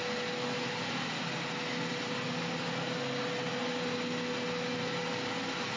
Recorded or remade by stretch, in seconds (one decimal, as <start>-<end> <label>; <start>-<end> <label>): 0.0-5.8 recorded